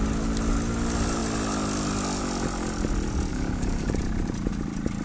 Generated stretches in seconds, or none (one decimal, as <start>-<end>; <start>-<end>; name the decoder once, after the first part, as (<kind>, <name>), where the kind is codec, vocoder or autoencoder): 3.3-3.9 (codec, DAC)